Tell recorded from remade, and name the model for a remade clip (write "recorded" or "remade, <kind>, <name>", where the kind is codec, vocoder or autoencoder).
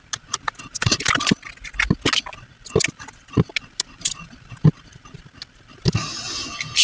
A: recorded